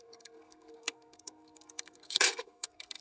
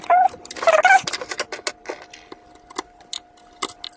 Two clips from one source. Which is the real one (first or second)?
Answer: second